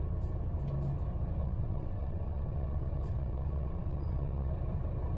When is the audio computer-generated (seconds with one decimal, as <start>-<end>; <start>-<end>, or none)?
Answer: 1.4-4.5